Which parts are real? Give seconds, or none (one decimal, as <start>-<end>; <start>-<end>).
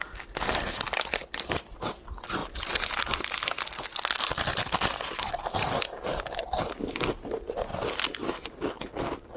0.0-9.4